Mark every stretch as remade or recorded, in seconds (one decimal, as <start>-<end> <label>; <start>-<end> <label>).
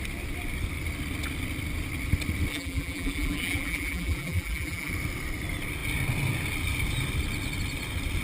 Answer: 0.0-2.5 recorded; 2.5-4.9 remade; 4.9-8.2 recorded